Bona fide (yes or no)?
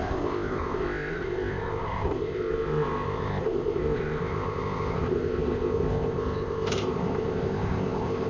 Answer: no